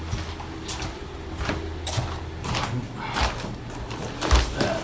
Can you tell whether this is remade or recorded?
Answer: recorded